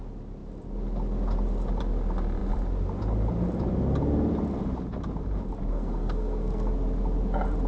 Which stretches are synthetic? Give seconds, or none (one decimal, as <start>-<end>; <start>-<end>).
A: 5.7-6.7